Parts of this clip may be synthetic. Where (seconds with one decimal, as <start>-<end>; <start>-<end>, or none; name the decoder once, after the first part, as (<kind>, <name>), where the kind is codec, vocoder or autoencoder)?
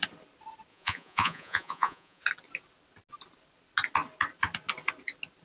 0.7-2.2 (vocoder, Vocos)